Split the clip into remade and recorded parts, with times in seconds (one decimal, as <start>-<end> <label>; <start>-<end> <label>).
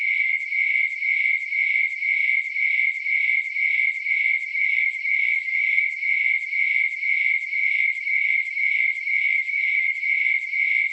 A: 0.0-4.5 recorded; 4.5-5.9 remade; 5.9-7.6 recorded; 7.6-10.0 remade; 10.0-10.9 recorded